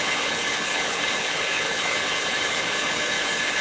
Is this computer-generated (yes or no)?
yes